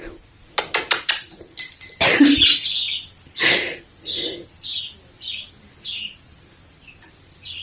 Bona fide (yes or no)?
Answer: yes